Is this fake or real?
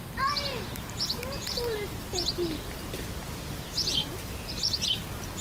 real